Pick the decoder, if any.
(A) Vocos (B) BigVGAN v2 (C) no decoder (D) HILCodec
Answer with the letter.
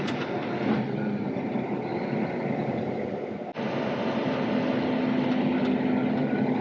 C